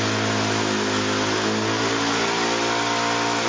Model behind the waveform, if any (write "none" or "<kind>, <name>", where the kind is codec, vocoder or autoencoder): none